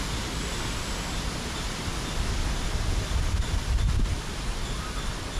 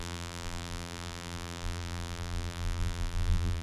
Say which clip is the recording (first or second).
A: first